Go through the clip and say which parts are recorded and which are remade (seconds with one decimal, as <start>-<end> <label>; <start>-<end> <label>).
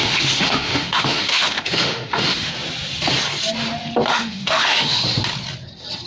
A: 0.0-2.5 remade; 2.5-4.1 recorded; 4.1-5.0 remade; 5.0-6.1 recorded